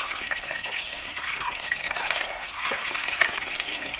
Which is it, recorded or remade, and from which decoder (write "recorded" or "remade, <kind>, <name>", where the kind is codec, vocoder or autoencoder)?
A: remade, codec, SNAC